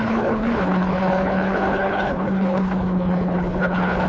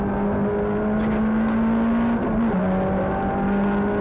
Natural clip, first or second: second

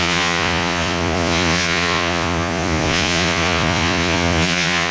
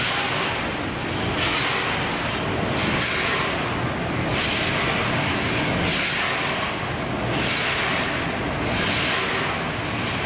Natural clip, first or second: second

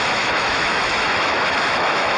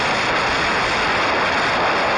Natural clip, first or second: second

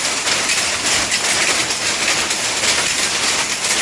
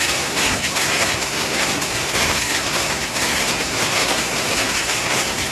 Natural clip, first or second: first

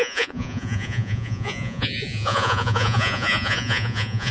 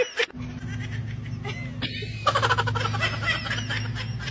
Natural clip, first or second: second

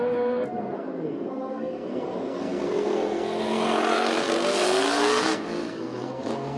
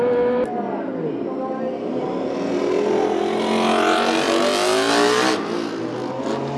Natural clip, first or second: second